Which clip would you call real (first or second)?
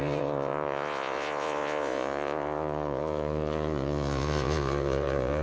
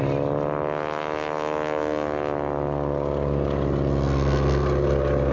second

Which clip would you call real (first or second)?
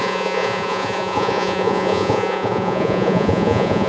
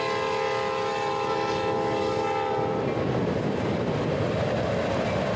second